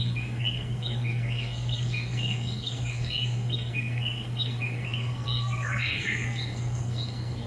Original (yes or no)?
no